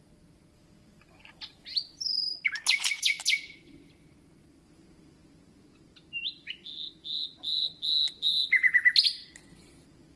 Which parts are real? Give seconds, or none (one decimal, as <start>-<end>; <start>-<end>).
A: 0.0-10.2